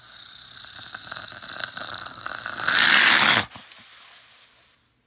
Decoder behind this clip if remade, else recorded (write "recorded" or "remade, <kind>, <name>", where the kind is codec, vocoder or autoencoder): recorded